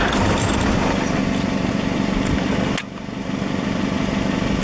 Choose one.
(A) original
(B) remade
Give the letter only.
A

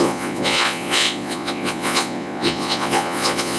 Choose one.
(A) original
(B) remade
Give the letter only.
B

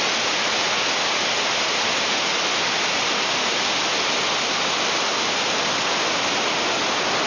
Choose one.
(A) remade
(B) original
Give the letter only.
B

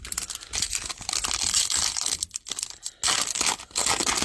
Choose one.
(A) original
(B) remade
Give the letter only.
A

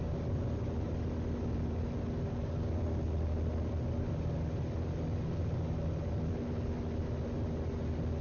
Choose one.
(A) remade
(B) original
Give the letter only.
B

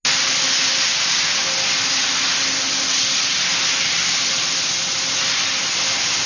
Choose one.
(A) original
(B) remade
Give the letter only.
A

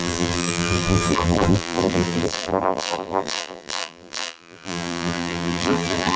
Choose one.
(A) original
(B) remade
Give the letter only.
B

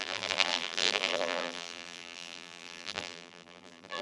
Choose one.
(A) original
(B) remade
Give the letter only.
B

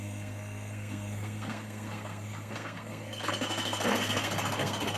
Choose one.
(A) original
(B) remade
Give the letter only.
B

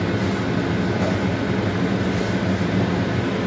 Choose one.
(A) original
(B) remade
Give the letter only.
A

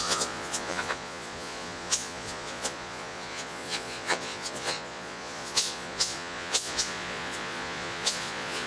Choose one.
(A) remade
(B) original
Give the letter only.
A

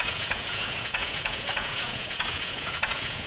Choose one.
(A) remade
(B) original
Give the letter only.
A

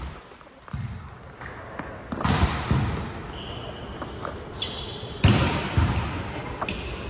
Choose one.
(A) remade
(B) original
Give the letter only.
B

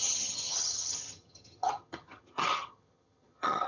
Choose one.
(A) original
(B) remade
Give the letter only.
B